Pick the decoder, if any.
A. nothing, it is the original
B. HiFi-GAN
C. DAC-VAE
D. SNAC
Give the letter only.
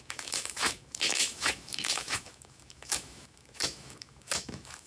C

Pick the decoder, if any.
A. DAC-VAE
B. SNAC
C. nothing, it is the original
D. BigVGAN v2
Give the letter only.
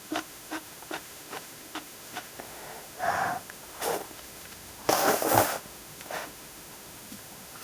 A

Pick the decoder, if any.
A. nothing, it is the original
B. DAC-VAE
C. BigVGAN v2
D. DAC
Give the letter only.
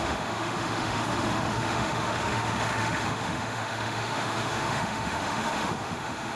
B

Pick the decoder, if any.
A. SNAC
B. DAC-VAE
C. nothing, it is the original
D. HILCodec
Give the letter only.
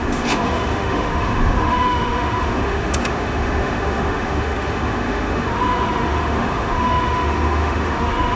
B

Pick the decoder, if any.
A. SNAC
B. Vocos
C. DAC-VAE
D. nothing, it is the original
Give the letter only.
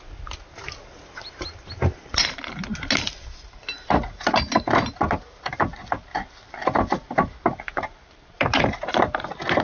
D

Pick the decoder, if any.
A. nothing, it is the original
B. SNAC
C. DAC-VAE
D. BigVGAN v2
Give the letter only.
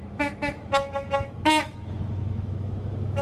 C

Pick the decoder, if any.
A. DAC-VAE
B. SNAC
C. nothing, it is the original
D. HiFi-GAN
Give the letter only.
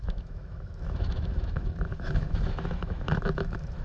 A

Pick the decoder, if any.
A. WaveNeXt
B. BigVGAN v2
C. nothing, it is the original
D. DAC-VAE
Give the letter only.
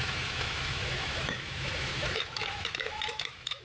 D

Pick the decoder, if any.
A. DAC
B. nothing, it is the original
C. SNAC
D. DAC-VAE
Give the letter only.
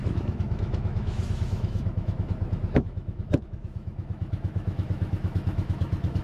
D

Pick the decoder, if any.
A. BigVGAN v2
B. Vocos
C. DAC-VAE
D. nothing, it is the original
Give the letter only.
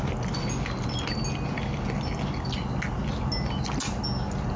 D